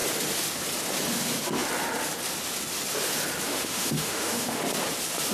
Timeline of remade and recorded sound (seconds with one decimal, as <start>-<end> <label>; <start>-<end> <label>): 0.0-3.5 recorded; 3.5-4.6 remade; 4.6-5.3 recorded